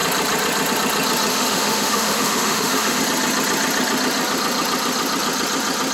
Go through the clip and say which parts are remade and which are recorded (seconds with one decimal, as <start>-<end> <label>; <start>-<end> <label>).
0.0-1.3 recorded; 1.3-3.0 remade; 3.0-5.9 recorded